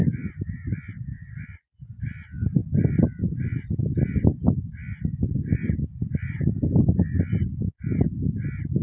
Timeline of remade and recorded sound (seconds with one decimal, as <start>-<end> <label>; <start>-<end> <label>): 0.0-1.3 remade; 1.3-2.6 recorded; 2.6-7.7 remade; 7.7-8.8 recorded